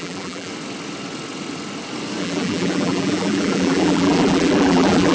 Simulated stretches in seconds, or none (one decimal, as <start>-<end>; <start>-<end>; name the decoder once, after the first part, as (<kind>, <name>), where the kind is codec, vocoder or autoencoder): 0.0-0.5 (vocoder, BigVGAN v2); 2.2-5.1